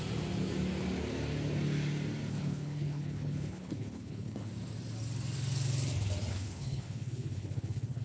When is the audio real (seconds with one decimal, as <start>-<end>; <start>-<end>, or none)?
0.0-2.3; 4.5-6.3